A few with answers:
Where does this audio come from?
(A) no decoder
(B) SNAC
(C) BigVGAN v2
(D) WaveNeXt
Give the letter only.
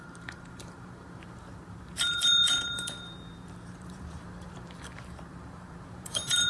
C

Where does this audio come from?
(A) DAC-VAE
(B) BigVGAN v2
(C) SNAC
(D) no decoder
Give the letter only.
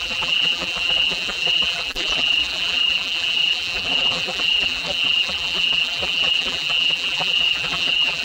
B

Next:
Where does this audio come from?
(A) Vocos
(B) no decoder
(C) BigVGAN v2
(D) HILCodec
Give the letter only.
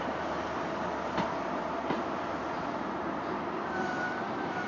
C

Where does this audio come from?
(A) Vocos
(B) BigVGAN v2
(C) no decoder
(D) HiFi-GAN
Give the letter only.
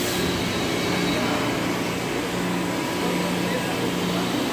C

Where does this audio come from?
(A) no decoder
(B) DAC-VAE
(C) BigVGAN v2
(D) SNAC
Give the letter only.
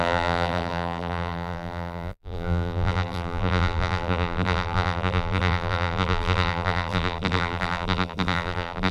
C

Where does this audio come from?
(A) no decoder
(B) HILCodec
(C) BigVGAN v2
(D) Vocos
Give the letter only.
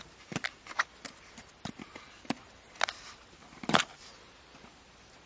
C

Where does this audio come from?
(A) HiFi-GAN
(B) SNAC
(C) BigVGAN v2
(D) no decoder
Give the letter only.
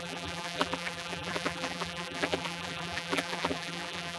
C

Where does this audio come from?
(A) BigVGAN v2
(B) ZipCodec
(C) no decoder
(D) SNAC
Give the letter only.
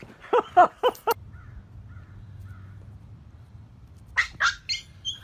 C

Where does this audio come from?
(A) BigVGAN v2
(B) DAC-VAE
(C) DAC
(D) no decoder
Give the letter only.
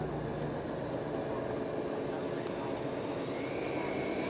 D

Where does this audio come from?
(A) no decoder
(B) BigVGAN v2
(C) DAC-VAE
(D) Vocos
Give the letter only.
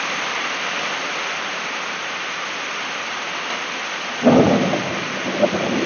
A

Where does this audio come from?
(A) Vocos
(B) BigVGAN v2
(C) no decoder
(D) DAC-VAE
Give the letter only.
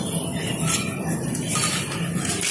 C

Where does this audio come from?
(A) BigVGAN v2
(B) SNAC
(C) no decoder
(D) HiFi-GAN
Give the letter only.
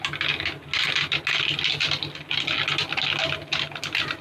C